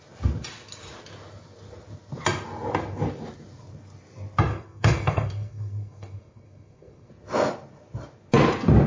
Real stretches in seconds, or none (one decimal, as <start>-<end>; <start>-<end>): 0.0-4.5; 7.1-8.9